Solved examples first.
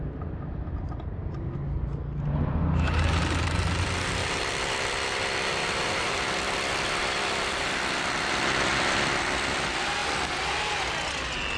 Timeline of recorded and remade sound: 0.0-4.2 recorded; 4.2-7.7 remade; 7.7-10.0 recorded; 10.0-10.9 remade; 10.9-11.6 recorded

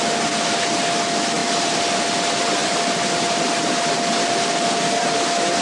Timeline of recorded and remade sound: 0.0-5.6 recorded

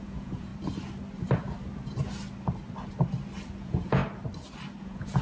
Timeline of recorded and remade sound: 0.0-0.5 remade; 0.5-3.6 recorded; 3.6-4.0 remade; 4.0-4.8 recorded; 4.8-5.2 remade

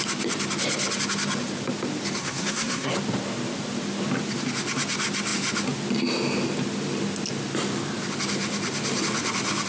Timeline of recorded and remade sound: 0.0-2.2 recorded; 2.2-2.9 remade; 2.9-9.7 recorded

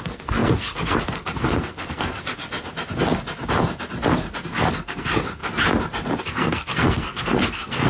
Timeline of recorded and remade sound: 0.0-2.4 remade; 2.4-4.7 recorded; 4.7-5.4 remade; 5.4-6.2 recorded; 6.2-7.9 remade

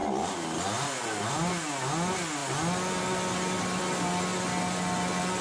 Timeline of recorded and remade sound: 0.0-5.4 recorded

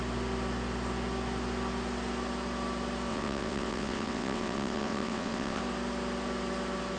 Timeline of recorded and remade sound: 0.0-3.1 recorded; 3.1-5.6 remade; 5.6-7.0 recorded

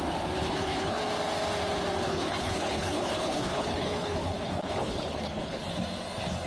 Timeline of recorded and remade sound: 0.0-0.4 recorded; 0.4-1.0 remade; 1.0-2.0 recorded; 2.0-5.7 remade; 5.7-6.5 recorded